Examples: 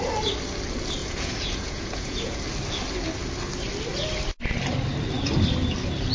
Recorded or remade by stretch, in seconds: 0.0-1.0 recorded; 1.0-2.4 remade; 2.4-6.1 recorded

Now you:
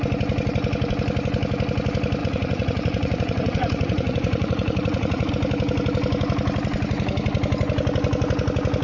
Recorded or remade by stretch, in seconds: 0.0-2.2 recorded; 2.2-5.3 remade; 5.3-8.8 recorded